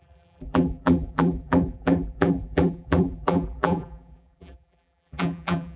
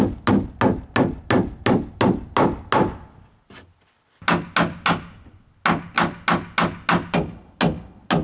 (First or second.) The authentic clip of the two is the second